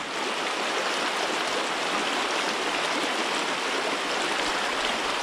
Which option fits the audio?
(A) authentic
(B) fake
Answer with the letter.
A